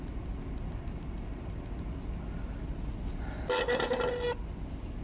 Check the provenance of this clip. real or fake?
real